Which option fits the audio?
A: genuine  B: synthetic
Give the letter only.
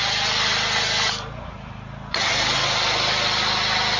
A